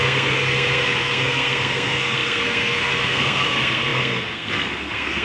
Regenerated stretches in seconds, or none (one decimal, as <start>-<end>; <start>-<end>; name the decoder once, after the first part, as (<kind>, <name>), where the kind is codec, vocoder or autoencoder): 0.0-5.2 (codec, SNAC)